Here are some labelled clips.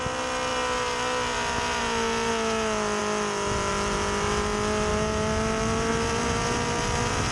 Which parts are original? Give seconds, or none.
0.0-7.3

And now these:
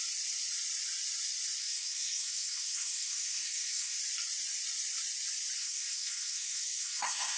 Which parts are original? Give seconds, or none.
0.0-1.6; 4.0-5.6

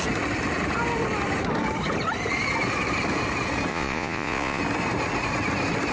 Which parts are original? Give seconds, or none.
0.0-3.7; 4.6-5.9

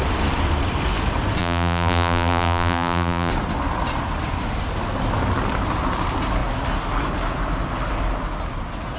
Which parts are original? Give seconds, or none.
0.0-1.4; 3.3-9.0

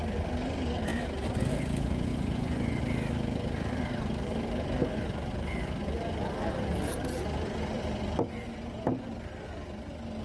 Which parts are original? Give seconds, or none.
0.0-2.1; 2.8-10.2